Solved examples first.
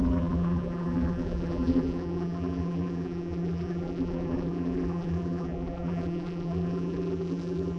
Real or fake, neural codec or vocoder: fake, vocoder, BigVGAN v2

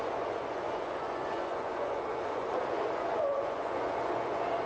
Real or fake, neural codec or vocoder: fake, vocoder, Vocos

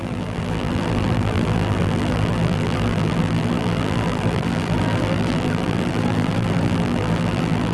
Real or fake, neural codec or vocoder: fake, vocoder, BigVGAN v2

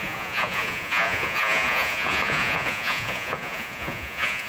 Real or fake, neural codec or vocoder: fake, vocoder, Vocos